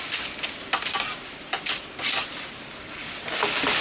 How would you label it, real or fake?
real